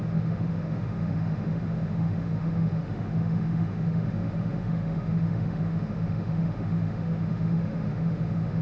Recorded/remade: remade